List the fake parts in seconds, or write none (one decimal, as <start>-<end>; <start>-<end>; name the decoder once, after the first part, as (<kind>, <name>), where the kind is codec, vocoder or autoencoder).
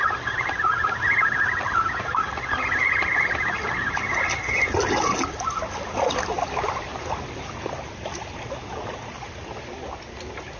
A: none